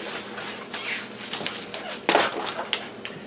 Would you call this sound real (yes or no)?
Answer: yes